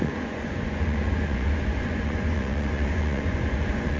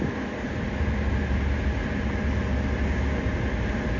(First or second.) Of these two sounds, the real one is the second